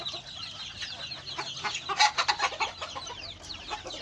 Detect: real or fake real